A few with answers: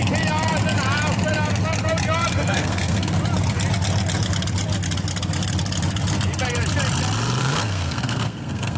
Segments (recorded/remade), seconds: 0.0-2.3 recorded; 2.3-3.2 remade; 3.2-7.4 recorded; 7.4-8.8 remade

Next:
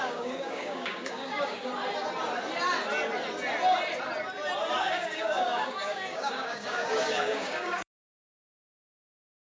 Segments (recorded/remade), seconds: 0.0-1.7 remade; 1.7-4.8 recorded; 4.8-9.5 remade

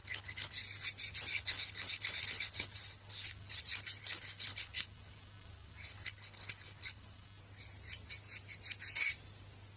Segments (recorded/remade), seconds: 0.0-0.5 remade; 0.5-1.3 recorded; 1.3-3.6 remade; 3.6-4.0 recorded; 4.0-7.4 remade; 7.4-9.8 recorded

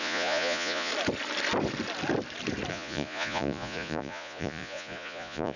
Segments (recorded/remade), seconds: 0.0-0.9 remade; 0.9-2.7 recorded; 2.7-5.6 remade

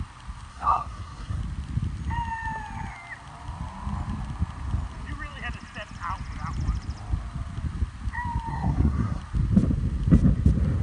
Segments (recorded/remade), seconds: 0.0-0.5 recorded; 0.5-1.4 remade; 1.4-8.5 recorded; 8.5-9.2 remade; 9.2-10.8 recorded

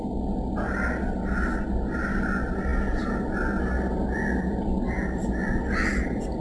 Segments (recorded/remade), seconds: 0.0-6.4 recorded